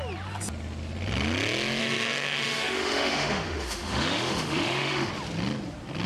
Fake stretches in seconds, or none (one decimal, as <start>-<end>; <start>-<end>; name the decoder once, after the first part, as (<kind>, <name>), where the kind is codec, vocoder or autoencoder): 1.8-5.1 (autoencoder, DAC-VAE)